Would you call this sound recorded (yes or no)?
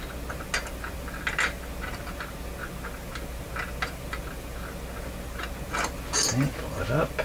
yes